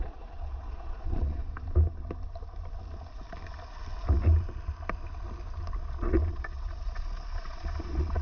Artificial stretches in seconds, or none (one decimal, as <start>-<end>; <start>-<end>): 0.0-1.4; 5.8-8.2

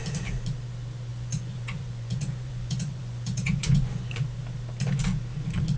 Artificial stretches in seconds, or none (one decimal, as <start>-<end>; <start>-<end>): 1.1-4.1

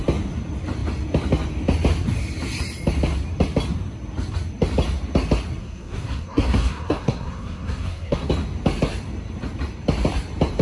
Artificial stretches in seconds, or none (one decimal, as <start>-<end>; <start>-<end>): 5.6-8.3

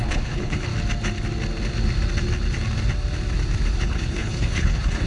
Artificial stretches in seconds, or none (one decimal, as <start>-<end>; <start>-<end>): 0.0-0.7; 3.8-5.1

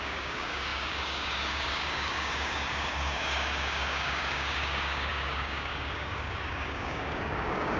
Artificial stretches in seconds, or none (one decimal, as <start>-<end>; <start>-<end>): 0.0-7.8

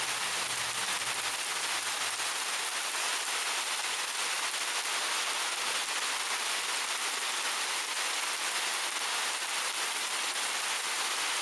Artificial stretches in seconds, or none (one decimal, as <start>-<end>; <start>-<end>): none

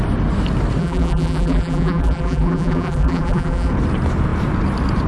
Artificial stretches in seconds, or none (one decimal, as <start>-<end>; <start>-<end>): 0.8-3.7

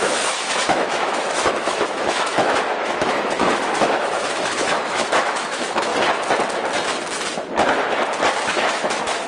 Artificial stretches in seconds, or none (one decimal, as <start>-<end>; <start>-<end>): 0.0-5.9; 8.5-9.3